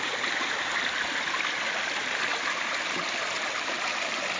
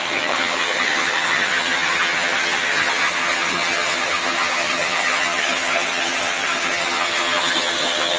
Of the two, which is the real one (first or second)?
first